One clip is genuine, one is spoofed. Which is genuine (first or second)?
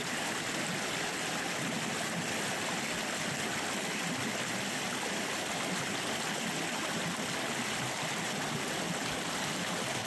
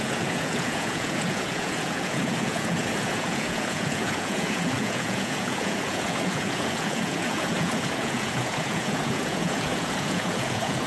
first